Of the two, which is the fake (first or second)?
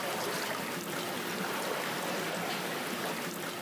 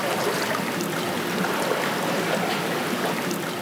second